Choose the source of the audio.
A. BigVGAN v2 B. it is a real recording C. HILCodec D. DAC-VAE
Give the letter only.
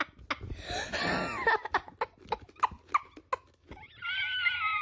B